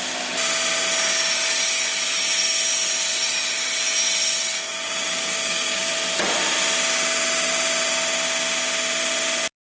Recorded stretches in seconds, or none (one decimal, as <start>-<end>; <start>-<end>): 0.0-4.5; 5.9-9.7